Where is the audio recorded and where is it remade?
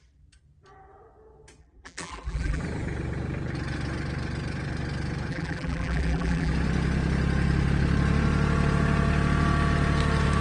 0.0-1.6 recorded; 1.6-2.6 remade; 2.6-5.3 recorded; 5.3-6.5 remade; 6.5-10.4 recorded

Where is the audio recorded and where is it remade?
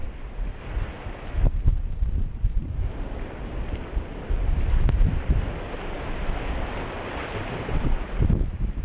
0.0-8.8 recorded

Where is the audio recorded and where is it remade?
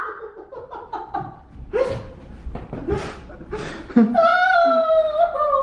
0.0-0.5 recorded; 0.5-3.9 remade; 3.9-5.6 recorded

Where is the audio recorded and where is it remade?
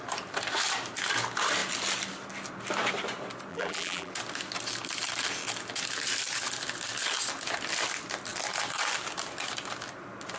0.0-3.5 recorded; 3.5-4.1 remade; 4.1-10.4 recorded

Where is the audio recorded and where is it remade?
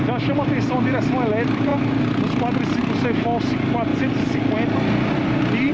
0.0-3.9 recorded; 3.9-5.7 remade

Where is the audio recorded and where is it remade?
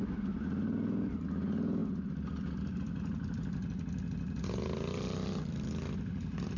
0.0-6.6 recorded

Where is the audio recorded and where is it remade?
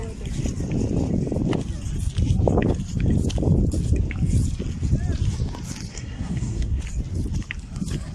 0.0-5.9 recorded; 5.9-6.8 remade; 6.8-8.1 recorded